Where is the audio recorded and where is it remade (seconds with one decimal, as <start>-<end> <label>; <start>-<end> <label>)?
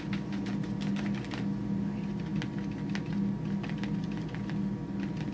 0.0-5.3 recorded